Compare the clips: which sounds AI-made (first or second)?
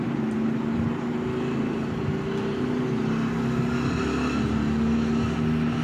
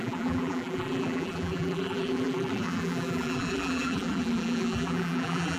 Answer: second